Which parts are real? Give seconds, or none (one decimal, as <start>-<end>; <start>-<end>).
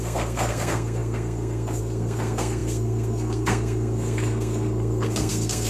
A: none